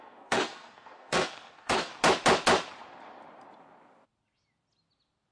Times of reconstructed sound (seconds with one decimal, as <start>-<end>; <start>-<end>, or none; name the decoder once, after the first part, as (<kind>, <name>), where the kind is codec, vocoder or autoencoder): 0.0-1.9 (codec, SNAC)